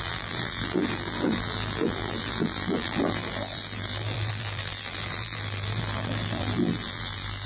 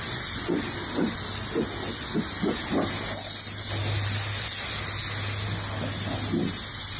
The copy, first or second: first